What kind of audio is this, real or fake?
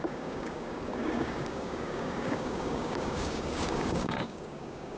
fake